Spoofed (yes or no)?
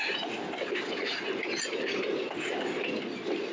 no